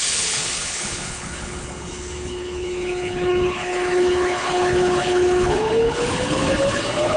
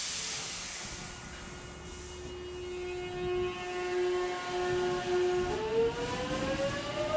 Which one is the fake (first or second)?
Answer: first